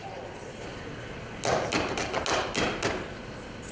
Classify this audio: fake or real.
real